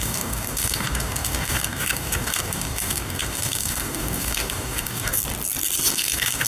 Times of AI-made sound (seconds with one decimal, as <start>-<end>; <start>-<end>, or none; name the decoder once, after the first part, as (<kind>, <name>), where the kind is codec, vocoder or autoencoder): 0.0-5.2 (codec, DAC); 5.9-6.5